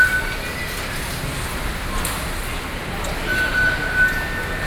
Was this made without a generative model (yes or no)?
yes